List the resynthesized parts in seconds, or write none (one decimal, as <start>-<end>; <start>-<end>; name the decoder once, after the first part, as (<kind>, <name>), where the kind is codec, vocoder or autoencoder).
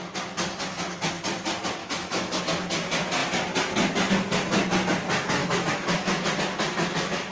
1.8-2.4 (autoencoder, DAC-VAE); 5.4-6.3